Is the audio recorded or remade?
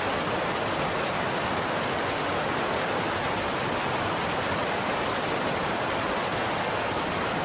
recorded